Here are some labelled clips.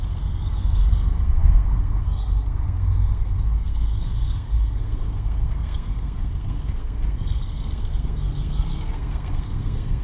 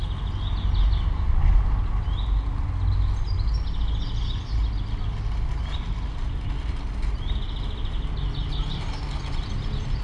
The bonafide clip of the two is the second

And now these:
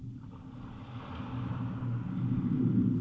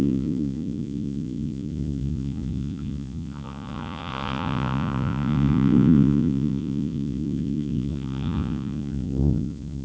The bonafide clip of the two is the first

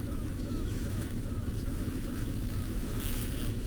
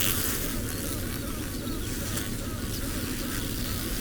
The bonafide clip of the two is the second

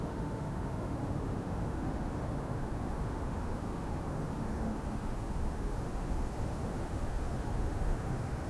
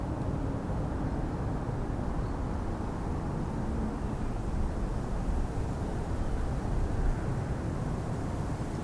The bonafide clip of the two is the second